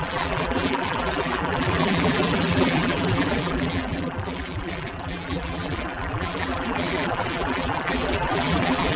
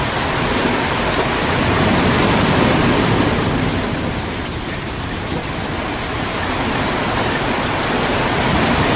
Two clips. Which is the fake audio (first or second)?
first